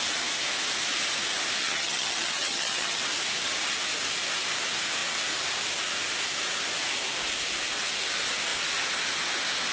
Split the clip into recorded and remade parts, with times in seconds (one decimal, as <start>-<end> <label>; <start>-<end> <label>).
0.0-1.6 recorded; 1.6-3.0 remade; 3.0-9.7 recorded